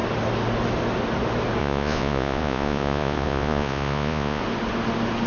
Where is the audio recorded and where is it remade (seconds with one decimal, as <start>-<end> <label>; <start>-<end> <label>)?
0.0-1.6 recorded; 1.6-4.4 remade; 4.4-5.3 recorded